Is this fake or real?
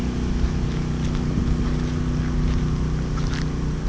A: real